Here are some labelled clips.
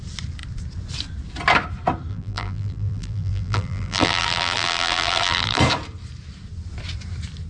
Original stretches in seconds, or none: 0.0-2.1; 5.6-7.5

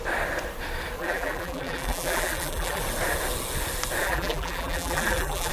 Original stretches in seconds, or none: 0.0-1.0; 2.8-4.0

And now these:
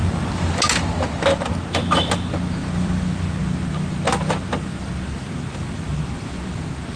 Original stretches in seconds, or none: 0.0-2.6; 3.4-5.5; 6.6-7.0